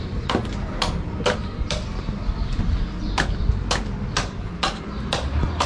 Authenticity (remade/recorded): recorded